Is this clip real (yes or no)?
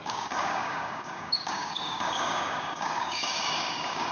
no